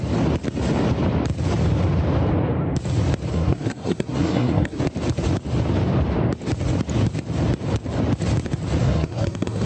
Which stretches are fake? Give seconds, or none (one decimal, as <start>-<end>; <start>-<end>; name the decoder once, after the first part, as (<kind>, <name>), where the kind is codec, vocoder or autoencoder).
3.3-4.8 (codec, SNAC); 8.8-9.7